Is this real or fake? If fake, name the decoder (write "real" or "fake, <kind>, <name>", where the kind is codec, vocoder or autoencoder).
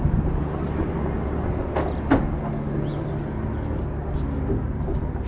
real